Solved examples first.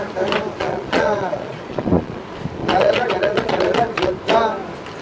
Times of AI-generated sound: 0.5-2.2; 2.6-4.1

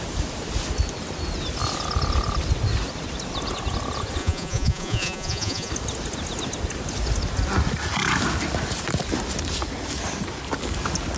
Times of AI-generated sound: 4.2-5.7